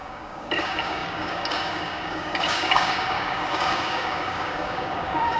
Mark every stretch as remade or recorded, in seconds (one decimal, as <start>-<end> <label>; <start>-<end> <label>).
0.0-5.4 remade

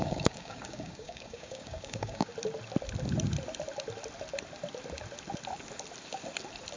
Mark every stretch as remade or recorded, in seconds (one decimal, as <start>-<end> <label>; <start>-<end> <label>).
0.0-2.3 remade; 2.3-6.8 recorded

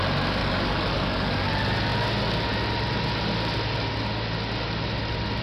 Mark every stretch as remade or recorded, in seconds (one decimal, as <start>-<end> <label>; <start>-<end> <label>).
0.0-0.4 recorded; 0.4-1.5 remade; 1.5-5.4 recorded

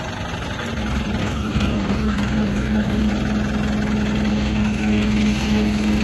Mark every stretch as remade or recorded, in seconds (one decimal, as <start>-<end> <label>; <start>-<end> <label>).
0.0-1.2 recorded; 1.2-3.1 remade; 3.1-4.3 recorded; 4.3-6.0 remade

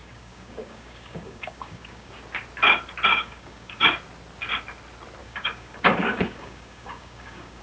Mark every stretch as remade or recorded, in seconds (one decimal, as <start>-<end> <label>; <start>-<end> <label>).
0.0-2.1 remade; 2.1-3.1 recorded; 3.1-3.9 remade; 3.9-5.2 recorded; 5.2-7.6 remade

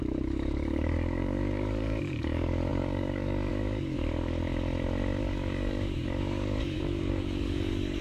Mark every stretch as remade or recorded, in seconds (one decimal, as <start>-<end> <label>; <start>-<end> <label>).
0.0-4.4 remade; 4.4-5.2 recorded; 5.2-8.0 remade

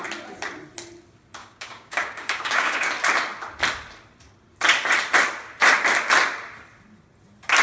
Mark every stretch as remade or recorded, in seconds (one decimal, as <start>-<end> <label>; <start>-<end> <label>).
0.0-1.4 recorded; 1.4-2.9 remade; 2.9-7.6 recorded